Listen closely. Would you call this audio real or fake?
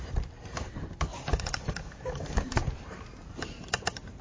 fake